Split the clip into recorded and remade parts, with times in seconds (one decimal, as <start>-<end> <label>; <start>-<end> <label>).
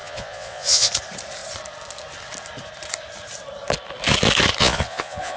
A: 0.0-0.9 remade; 0.9-4.6 recorded; 4.6-5.4 remade